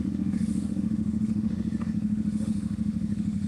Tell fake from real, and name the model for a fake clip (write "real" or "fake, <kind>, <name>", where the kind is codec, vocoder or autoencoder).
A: fake, autoencoder, DAC-VAE